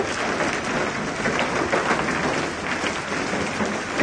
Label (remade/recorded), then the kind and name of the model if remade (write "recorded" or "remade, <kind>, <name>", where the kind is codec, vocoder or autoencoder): recorded